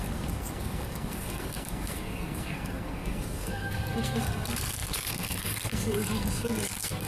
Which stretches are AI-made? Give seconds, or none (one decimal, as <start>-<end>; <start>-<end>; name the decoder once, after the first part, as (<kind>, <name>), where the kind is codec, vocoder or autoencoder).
0.0-7.1 (codec, SNAC)